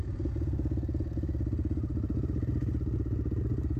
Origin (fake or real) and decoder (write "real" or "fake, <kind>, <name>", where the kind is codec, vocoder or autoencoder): real